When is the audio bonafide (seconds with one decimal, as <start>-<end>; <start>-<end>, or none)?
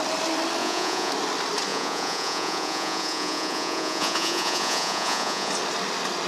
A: 0.0-0.6; 1.1-1.7; 5.5-6.3